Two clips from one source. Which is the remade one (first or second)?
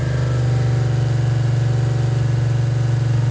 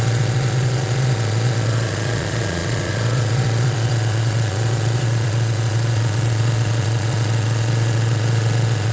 second